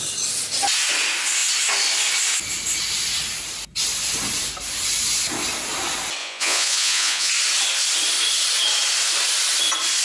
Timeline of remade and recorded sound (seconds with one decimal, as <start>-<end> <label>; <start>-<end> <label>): 0.0-6.2 recorded; 6.2-7.3 remade; 7.3-10.0 recorded